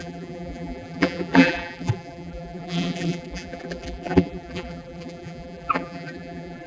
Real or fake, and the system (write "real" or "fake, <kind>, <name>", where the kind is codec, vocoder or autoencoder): fake, vocoder, BigVGAN v2